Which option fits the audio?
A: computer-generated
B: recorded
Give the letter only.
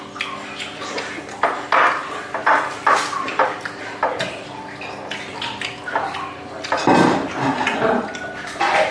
B